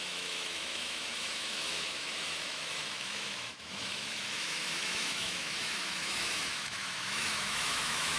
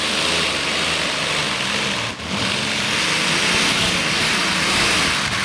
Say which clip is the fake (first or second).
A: first